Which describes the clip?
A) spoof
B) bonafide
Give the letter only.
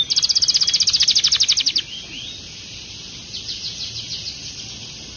B